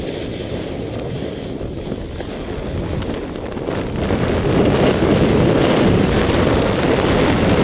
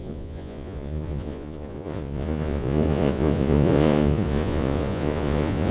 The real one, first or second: first